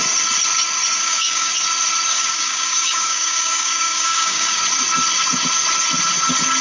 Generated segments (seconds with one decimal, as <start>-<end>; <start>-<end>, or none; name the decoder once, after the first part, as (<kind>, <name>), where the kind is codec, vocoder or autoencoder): 1.0-1.5 (codec, DAC); 2.1-4.6